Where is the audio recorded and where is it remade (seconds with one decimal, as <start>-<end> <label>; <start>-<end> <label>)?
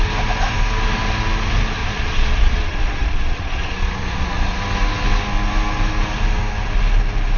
0.0-1.8 recorded; 1.8-4.6 remade; 4.6-7.4 recorded